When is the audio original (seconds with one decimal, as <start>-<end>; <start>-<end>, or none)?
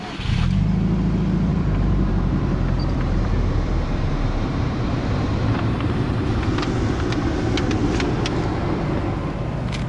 0.0-1.5; 6.3-9.9